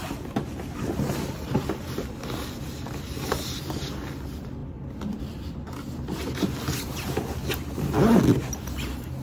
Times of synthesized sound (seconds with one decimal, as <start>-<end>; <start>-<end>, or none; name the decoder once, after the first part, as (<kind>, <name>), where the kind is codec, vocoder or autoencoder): none